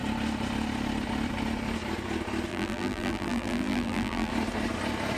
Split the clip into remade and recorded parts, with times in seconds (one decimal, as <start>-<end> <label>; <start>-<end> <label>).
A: 0.0-2.5 recorded; 2.5-4.3 remade; 4.3-5.2 recorded